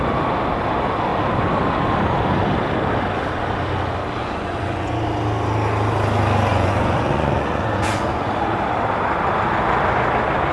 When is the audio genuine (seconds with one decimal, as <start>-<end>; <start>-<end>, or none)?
0.0-4.2; 4.9-6.5; 8.3-10.5